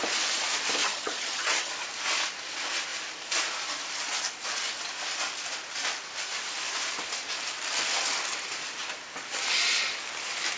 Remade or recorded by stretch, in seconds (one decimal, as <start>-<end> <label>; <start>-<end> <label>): 0.0-0.8 recorded; 0.8-1.7 remade; 1.7-10.6 recorded